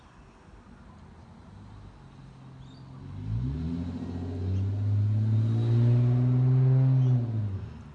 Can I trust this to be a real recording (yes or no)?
yes